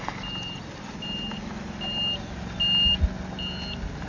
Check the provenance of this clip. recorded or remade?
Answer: recorded